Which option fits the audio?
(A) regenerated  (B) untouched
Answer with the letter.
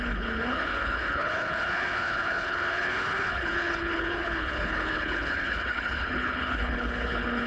A